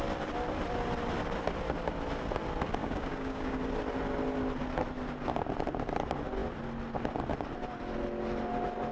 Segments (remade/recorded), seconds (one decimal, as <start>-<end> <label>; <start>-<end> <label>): 0.0-2.8 recorded; 2.8-3.6 remade; 3.6-8.9 recorded